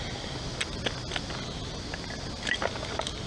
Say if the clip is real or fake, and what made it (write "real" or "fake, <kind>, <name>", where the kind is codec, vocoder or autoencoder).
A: real